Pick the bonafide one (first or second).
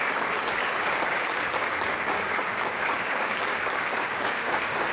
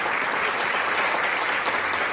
second